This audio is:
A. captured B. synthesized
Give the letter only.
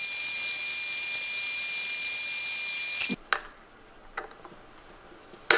A